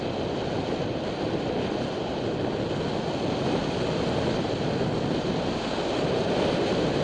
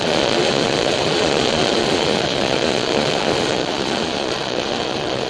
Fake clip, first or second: second